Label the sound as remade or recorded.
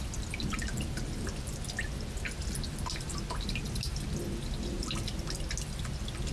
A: recorded